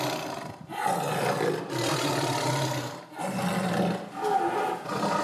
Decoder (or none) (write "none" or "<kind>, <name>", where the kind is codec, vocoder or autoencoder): none